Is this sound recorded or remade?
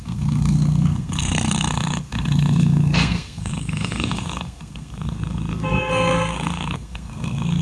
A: remade